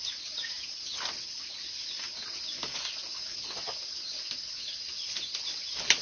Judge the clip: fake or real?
real